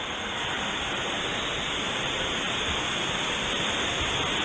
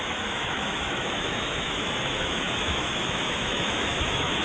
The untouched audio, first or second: first